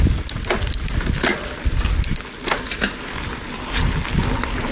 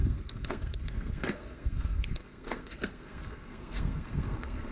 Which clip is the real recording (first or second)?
first